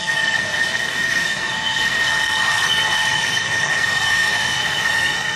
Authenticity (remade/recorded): remade